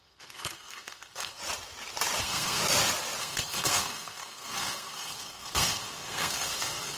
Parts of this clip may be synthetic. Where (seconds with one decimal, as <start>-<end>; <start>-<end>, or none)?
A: 0.0-1.4; 2.2-2.6; 3.2-7.0